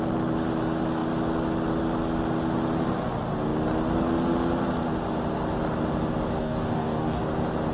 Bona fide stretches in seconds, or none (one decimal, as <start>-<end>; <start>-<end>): 0.0-6.4; 7.2-7.7